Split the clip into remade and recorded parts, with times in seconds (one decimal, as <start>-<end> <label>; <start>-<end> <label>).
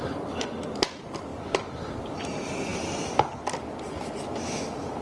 0.0-5.0 remade